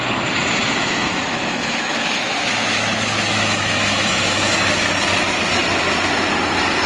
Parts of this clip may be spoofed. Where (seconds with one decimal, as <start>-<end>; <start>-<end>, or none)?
0.8-4.9